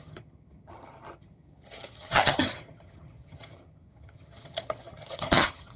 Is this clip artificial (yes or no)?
yes